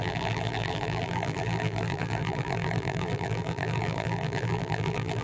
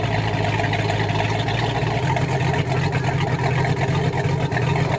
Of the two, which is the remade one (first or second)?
first